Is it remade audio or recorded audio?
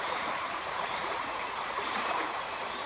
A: remade